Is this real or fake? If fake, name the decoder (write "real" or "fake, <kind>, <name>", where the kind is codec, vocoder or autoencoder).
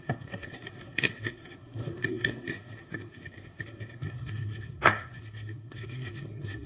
fake, codec, SNAC